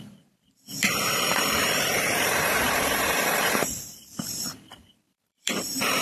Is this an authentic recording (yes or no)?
no